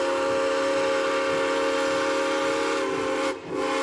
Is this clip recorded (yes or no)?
yes